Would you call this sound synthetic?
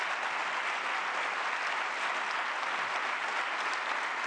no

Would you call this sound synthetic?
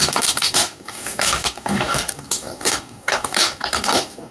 yes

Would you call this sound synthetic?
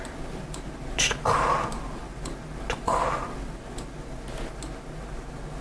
no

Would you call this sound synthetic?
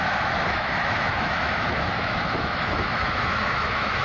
yes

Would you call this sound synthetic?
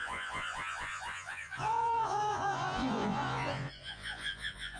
yes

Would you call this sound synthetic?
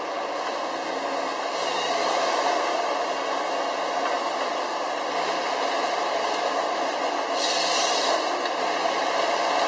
no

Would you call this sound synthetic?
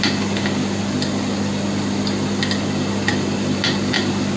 no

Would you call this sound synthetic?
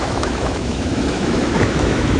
yes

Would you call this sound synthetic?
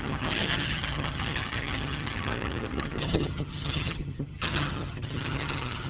yes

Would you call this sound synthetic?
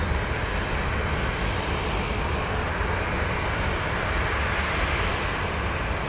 no